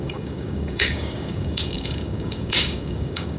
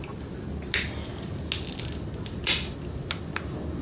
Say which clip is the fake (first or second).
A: first